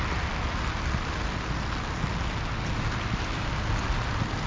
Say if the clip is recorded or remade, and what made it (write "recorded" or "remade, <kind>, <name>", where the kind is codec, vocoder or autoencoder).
recorded